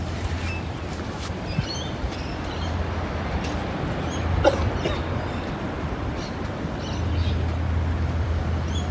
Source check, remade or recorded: recorded